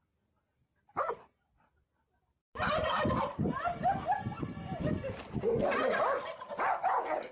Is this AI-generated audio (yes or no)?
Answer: no